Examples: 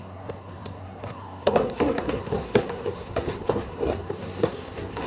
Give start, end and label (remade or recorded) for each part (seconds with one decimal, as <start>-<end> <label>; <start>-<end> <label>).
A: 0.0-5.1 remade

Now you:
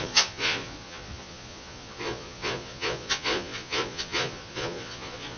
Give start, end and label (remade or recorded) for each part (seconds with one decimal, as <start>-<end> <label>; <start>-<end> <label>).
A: 0.0-5.4 remade

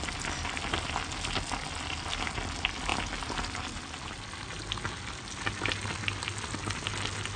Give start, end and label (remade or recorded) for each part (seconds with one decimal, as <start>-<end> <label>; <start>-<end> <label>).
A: 0.0-7.4 recorded